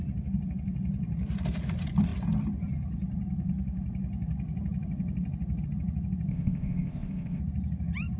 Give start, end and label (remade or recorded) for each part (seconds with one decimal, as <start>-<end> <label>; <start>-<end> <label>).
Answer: 0.0-6.3 recorded; 6.3-7.4 remade; 7.4-8.2 recorded

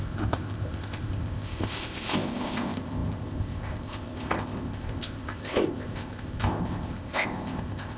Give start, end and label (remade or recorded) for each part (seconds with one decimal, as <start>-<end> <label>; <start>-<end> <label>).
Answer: 0.0-8.0 remade

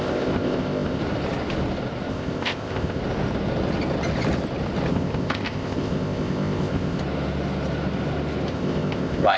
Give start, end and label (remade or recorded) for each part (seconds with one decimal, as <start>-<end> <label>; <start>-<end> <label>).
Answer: 0.0-1.0 remade; 1.0-2.1 recorded; 2.1-3.0 remade; 3.0-4.9 recorded; 4.9-7.0 remade; 7.0-8.5 recorded; 8.5-9.4 remade

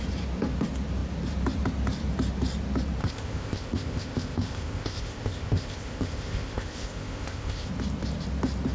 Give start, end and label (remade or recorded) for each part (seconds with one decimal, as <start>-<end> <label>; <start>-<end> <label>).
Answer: 0.0-3.0 recorded; 3.0-7.7 remade; 7.7-8.7 recorded

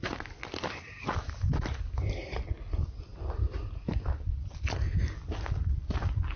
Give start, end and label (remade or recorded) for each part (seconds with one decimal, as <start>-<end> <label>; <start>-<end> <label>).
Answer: 0.0-6.4 recorded

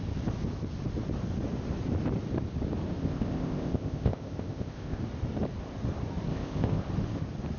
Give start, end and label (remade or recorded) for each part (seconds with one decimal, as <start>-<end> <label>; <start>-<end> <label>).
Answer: 0.0-3.0 recorded; 3.0-5.0 remade; 5.0-6.3 recorded; 6.3-6.8 remade; 6.8-7.6 recorded

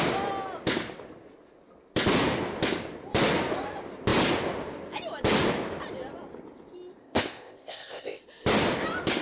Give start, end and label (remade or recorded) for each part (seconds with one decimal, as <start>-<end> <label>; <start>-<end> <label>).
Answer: 0.0-7.0 recorded; 7.0-8.2 remade; 8.2-9.2 recorded